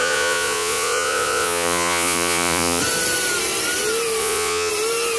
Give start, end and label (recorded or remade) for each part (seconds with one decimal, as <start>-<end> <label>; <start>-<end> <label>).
0.0-2.8 remade; 2.8-4.2 recorded; 4.2-4.7 remade; 4.7-5.2 recorded

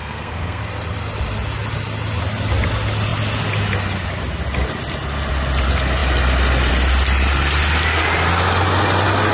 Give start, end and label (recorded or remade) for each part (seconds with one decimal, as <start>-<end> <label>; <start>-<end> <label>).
0.0-0.6 remade; 0.6-9.3 recorded